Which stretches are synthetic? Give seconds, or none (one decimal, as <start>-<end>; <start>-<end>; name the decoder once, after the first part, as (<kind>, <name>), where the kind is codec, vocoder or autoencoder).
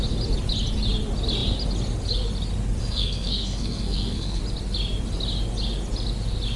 2.8-4.4 (codec, SNAC)